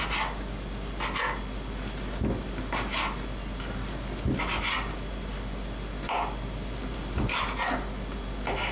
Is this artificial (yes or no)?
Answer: no